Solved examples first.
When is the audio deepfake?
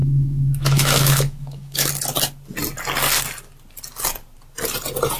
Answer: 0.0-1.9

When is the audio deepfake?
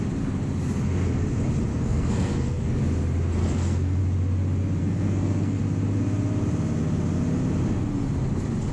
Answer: 1.7-2.8; 3.4-4.0; 4.8-5.6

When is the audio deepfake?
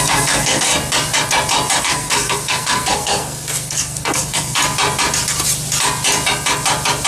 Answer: 0.0-0.7; 1.8-4.6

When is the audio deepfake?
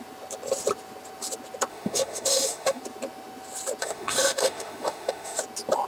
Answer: 1.7-2.8; 3.8-5.4